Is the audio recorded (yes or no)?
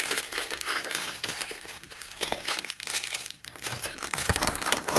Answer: no